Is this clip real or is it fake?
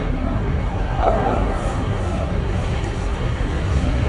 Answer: fake